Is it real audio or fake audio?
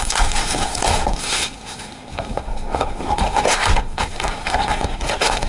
fake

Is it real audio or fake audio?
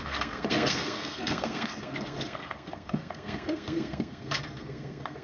fake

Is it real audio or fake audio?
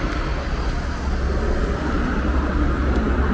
real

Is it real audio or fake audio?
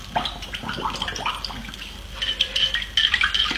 real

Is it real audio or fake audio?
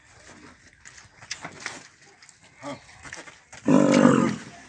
real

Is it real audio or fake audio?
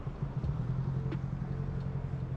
real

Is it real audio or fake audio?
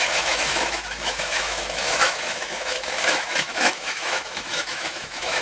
fake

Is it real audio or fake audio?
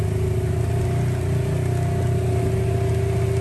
real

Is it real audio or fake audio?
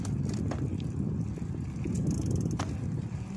real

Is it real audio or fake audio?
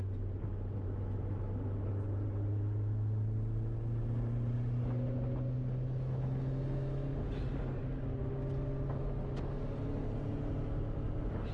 real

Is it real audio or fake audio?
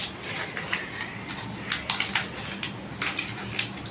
real